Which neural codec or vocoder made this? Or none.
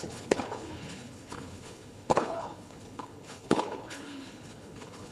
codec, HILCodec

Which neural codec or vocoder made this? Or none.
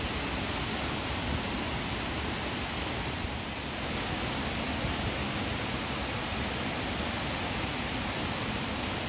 none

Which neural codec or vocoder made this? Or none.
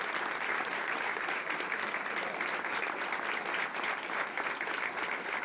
none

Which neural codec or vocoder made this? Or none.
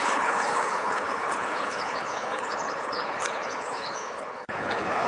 codec, HILCodec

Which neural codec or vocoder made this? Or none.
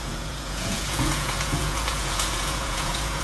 vocoder, Vocos